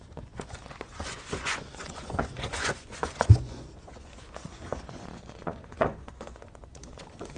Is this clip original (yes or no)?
no